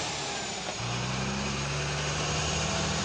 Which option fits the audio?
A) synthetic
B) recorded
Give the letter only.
B